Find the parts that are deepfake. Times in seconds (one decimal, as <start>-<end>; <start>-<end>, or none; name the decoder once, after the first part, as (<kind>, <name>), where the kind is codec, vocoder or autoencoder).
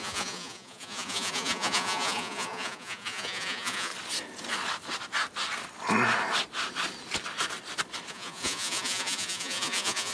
0.0-3.9 (vocoder, Vocos); 8.1-10.1